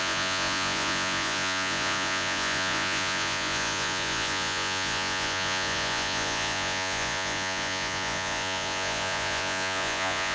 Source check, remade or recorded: remade